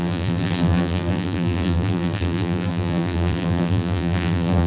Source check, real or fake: fake